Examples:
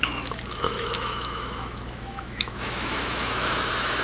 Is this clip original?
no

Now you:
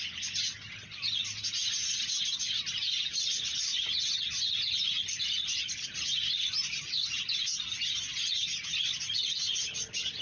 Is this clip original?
yes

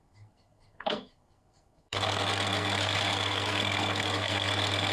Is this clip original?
no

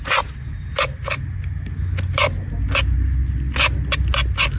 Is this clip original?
yes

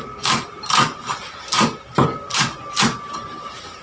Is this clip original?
yes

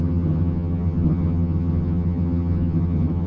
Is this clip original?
no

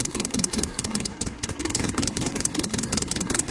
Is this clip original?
no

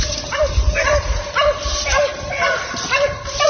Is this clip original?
no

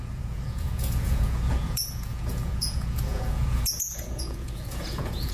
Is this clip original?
no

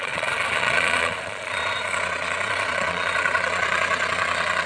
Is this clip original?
no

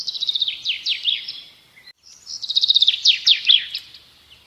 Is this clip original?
yes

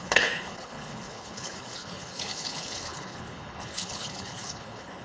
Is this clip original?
no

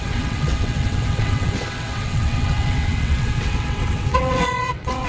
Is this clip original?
no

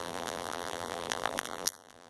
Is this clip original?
no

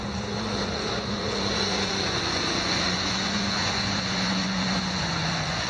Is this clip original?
no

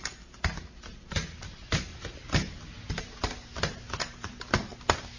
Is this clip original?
yes